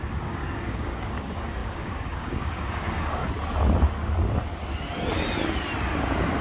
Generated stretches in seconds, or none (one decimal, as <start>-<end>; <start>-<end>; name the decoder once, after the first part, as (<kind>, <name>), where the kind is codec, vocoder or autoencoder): 0.0-3.2 (codec, DAC)